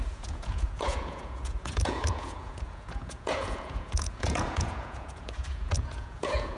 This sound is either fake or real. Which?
fake